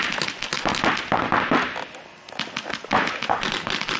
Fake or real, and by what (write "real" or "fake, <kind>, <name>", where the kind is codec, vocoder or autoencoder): real